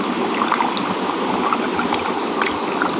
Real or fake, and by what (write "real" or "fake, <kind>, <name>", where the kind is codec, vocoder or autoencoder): real